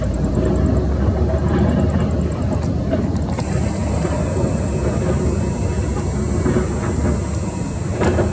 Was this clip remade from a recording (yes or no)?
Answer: no